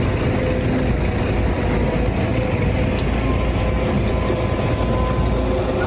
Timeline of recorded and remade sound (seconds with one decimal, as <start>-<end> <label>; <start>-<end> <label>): 0.0-5.9 recorded